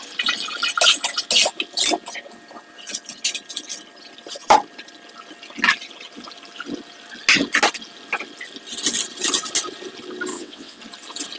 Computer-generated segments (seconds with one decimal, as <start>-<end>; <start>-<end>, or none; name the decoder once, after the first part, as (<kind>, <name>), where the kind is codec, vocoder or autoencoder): 10.3-10.8 (vocoder, WaveNeXt)